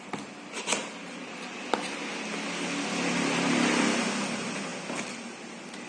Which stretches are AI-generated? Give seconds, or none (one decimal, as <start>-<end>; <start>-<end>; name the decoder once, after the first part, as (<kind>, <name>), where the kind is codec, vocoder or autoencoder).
none